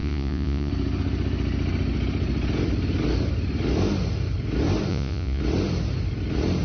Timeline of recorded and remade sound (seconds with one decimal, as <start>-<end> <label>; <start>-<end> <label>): 0.0-0.7 remade; 0.7-4.9 recorded; 4.9-5.4 remade; 5.4-6.6 recorded